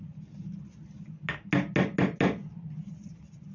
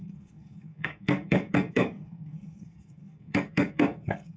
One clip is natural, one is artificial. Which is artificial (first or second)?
second